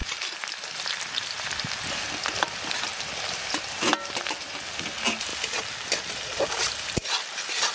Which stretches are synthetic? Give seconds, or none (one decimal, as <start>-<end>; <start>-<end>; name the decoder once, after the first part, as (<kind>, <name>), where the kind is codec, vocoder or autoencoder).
0.0-1.7 (vocoder, BigVGAN v2)